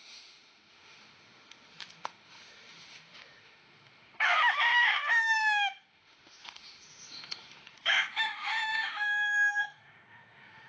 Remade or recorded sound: remade